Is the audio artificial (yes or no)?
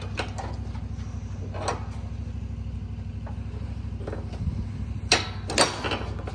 no